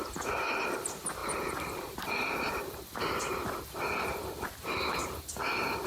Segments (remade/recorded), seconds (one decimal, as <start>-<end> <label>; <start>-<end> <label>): 0.0-5.9 recorded